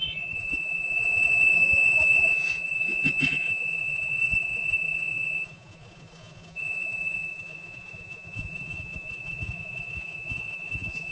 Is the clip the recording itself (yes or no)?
no